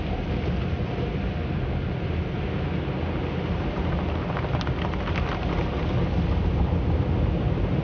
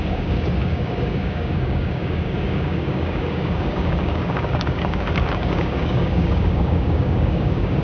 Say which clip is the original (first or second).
first